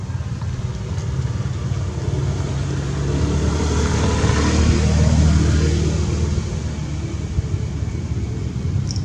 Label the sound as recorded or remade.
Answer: recorded